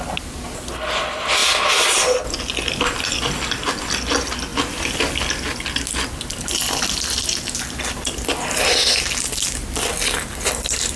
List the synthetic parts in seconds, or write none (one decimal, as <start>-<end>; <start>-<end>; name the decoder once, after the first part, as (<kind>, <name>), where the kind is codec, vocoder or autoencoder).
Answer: none